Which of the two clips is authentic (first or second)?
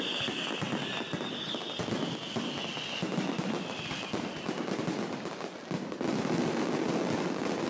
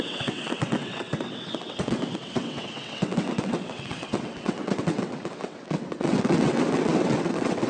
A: first